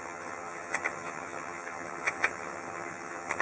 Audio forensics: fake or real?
fake